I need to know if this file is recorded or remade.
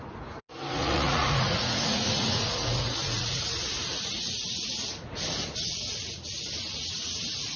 remade